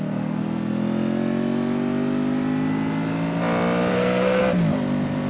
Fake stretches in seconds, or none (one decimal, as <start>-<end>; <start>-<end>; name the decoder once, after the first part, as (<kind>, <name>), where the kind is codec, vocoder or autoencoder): 0.0-0.7 (codec, SNAC); 3.9-4.4